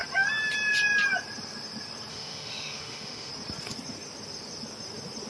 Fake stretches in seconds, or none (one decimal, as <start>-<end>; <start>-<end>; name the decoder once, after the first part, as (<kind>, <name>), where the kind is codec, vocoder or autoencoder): 2.1-3.3 (autoencoder, DAC-VAE)